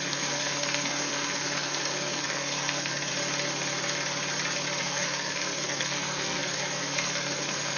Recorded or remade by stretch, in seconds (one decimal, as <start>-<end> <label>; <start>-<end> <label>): 0.0-3.1 remade; 3.1-4.8 recorded; 4.8-7.8 remade